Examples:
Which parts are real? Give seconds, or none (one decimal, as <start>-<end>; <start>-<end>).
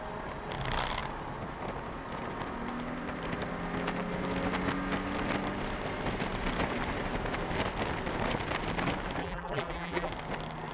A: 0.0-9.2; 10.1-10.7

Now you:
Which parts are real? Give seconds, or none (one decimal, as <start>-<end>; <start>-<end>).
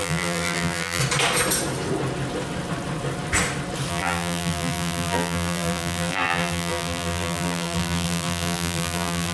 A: 1.0-3.9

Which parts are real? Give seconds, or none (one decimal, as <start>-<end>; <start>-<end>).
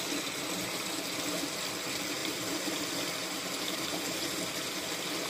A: 0.0-2.2; 2.8-3.2; 4.4-5.3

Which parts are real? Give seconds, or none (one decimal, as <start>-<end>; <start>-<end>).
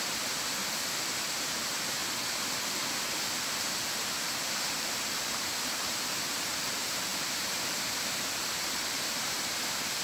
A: 0.6-1.1; 2.0-3.7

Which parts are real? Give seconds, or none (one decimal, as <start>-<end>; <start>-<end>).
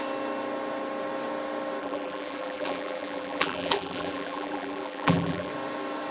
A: 0.0-1.8; 5.5-6.1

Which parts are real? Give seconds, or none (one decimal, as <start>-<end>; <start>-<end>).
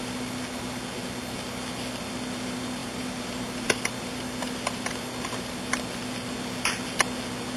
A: 0.0-2.8; 5.0-7.6